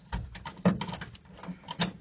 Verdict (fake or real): real